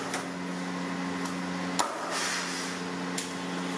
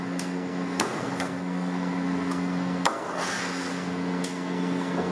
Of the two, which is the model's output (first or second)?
second